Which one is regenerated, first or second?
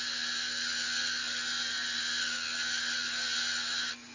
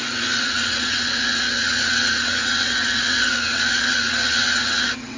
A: second